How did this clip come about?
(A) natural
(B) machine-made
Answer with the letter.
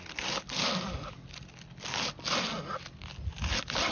A